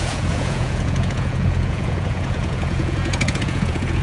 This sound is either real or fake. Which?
fake